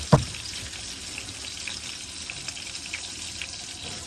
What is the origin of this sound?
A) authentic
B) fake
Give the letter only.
A